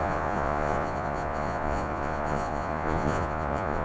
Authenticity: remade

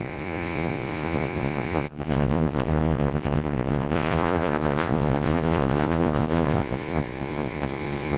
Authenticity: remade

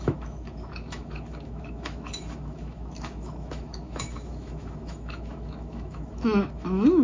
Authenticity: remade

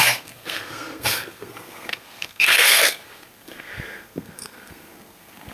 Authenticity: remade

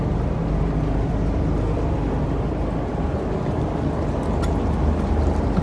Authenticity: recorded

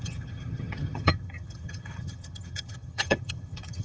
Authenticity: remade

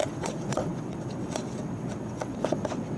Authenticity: remade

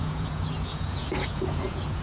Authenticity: remade